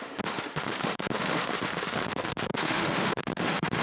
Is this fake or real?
fake